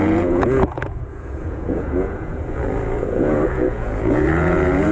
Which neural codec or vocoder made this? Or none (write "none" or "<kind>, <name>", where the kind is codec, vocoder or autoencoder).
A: vocoder, Vocos